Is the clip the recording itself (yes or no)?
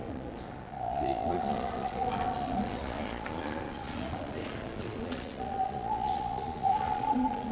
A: no